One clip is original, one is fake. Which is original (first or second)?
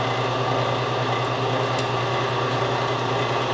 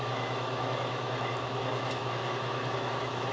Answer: first